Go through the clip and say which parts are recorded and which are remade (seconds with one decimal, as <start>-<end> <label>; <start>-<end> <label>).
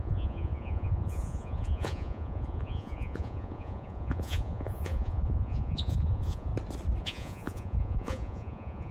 0.0-6.5 remade; 6.5-7.0 recorded; 7.0-8.9 remade